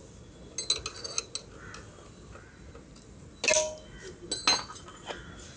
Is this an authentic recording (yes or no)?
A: yes